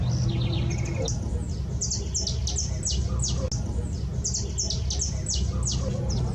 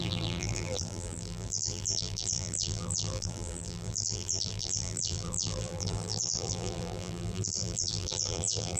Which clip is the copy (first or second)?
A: second